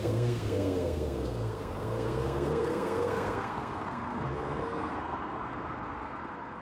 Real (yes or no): no